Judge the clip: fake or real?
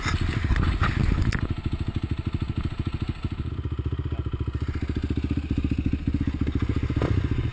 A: real